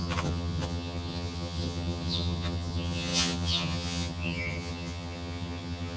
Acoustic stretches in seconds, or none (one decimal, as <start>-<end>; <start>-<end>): none